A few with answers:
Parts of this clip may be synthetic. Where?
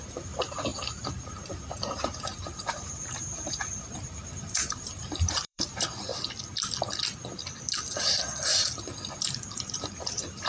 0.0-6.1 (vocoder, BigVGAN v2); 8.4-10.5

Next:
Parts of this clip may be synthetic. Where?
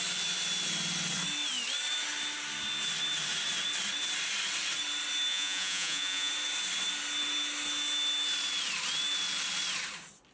5.3-6.3 (vocoder, Vocos)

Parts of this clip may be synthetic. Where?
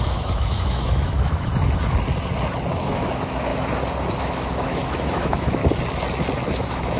0.0-1.5 (autoencoder, DAC-VAE); 2.7-3.5; 4.2-5.6; 6.5-7.0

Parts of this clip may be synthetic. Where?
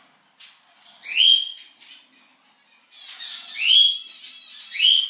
none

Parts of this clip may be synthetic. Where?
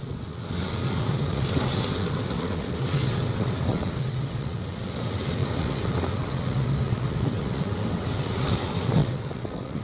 0.0-9.8 (vocoder, WaveNeXt)